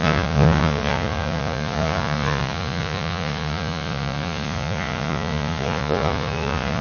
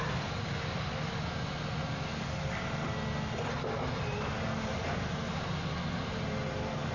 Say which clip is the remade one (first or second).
first